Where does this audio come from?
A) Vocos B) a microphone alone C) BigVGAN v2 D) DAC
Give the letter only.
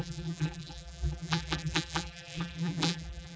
C